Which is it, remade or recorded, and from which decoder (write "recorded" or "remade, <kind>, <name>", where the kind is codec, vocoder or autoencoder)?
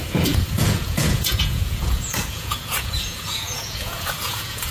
remade, vocoder, Vocos